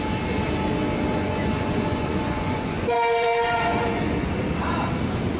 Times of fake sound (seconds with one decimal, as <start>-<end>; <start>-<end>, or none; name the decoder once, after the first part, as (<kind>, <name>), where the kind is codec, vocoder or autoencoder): 1.1-4.3 (vocoder, Vocos)